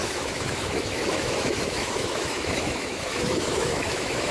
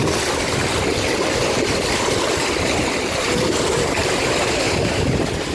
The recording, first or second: second